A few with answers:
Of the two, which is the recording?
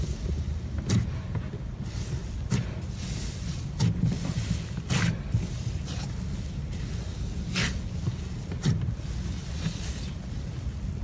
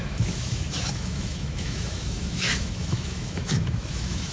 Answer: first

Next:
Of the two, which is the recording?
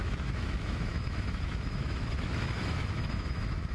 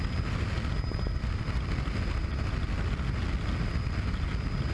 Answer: second